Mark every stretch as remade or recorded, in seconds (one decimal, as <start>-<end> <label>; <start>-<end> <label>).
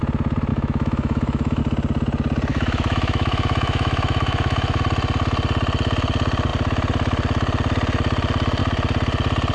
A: 0.0-0.5 recorded; 0.5-1.6 remade; 1.6-2.5 recorded; 2.5-4.8 remade; 4.8-9.5 recorded